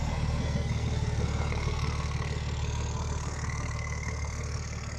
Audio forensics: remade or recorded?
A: remade